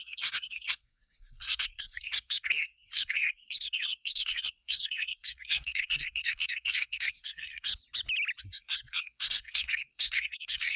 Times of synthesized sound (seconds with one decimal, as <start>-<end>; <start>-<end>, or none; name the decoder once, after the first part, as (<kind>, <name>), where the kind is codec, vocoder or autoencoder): 0.0-7.7 (codec, SNAC); 8.4-10.8